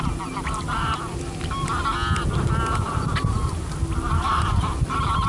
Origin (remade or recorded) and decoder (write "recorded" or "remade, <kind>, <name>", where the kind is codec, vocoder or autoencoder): recorded